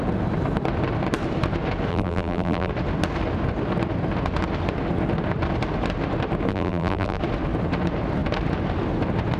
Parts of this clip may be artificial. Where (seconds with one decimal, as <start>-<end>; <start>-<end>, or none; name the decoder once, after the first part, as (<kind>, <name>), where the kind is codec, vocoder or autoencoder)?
1.9-2.7 (vocoder, BigVGAN v2); 6.5-7.2